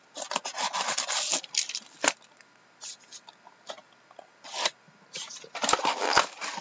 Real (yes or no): yes